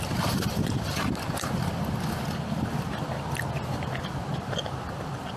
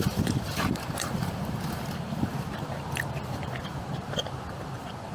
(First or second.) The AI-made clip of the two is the second